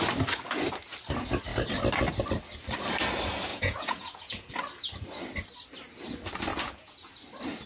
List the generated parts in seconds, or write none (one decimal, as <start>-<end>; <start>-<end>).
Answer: 3.5-4.5; 6.5-7.1